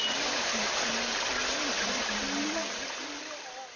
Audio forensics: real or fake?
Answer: real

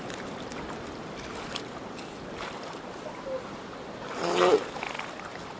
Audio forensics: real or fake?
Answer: real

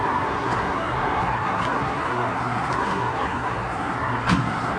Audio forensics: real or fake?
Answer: fake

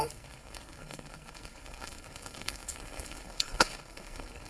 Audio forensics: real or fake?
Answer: fake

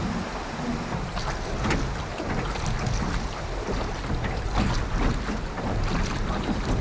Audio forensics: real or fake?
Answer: real